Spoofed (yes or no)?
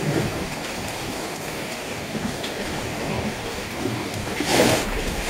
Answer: yes